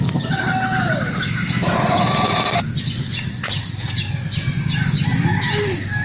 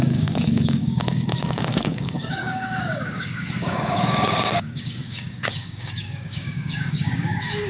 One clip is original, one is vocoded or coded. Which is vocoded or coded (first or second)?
second